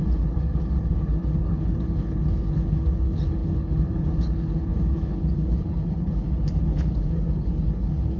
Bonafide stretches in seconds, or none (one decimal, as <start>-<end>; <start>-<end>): none